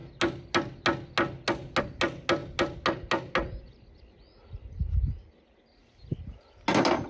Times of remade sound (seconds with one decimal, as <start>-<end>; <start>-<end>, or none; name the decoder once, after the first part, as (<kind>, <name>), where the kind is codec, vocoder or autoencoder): none